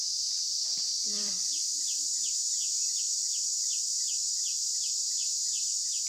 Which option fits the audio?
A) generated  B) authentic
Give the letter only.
A